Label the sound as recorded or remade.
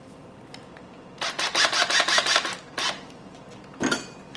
recorded